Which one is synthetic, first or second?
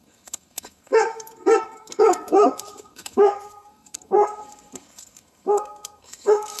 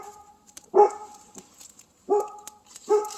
first